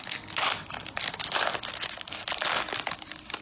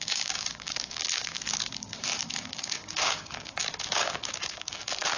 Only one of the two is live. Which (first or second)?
first